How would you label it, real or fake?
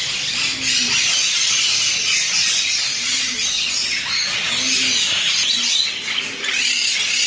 real